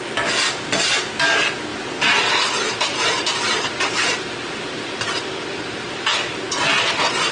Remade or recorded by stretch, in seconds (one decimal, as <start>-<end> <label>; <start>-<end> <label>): 0.0-7.3 recorded